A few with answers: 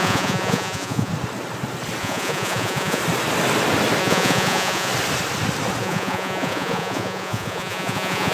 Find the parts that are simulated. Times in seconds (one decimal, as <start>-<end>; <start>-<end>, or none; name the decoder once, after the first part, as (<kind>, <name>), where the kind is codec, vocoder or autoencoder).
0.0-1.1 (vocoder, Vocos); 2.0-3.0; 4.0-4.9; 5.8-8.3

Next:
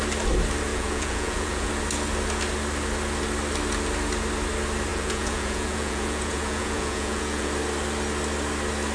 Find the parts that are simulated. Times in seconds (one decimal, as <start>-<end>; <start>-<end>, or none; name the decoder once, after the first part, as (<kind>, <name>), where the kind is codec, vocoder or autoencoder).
0.7-1.7 (vocoder, Vocos); 4.9-7.5

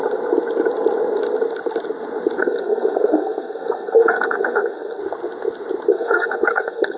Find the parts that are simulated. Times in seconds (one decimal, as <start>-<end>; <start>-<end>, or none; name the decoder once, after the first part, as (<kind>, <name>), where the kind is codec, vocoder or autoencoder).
2.4-5.0 (codec, SNAC); 5.9-7.0

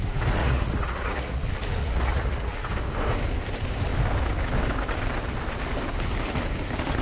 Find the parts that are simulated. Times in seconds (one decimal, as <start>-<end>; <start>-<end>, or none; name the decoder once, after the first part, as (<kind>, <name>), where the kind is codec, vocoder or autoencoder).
0.4-1.4 (vocoder, Vocos); 1.8-2.6

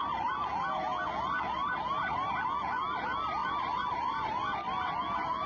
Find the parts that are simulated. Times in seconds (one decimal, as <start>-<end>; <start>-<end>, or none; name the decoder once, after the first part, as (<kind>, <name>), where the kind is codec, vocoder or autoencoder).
3.4-4.3 (vocoder, BigVGAN v2)

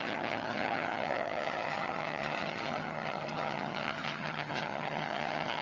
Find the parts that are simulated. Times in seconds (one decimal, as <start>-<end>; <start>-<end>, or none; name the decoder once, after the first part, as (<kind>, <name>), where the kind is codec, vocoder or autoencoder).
0.0-5.6 (vocoder, HiFi-GAN)

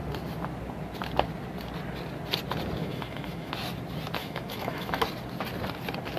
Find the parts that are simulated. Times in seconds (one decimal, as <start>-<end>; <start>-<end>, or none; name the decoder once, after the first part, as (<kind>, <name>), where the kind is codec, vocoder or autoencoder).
2.8-3.5 (autoencoder, DAC-VAE); 4.2-5.0